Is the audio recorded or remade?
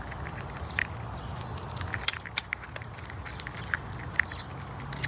recorded